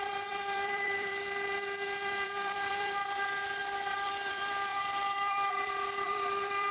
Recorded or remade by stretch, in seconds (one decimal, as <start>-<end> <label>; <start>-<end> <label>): 0.0-3.0 remade; 3.0-3.6 recorded; 3.6-6.7 remade